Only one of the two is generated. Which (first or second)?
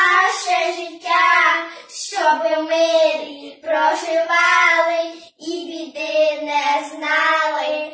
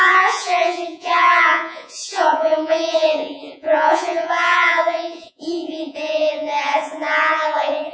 second